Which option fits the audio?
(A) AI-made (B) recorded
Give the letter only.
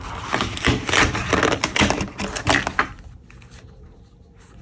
B